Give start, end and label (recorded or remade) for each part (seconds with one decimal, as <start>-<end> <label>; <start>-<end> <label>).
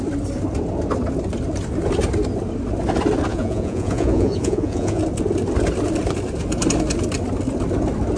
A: 0.0-3.3 recorded; 3.3-5.0 remade; 5.0-8.2 recorded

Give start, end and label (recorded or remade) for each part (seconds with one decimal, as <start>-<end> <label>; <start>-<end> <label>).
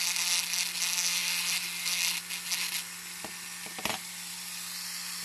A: 0.0-5.2 recorded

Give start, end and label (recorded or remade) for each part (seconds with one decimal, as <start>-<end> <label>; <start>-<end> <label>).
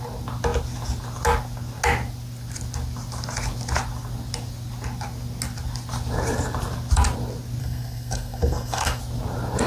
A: 0.0-7.6 recorded; 7.6-9.0 remade; 9.0-9.7 recorded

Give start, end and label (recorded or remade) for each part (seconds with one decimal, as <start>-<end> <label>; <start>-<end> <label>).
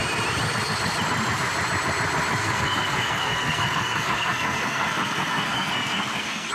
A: 0.0-2.4 recorded; 2.4-6.5 remade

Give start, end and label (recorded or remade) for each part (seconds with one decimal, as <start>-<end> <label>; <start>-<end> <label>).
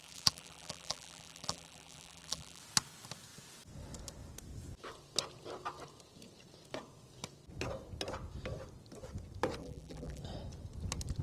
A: 0.0-2.6 remade; 2.6-9.6 recorded; 9.6-10.2 remade; 10.2-11.2 recorded